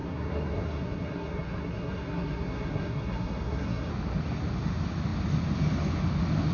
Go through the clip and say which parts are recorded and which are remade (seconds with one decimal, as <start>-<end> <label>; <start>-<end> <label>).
0.0-3.9 remade; 3.9-6.5 recorded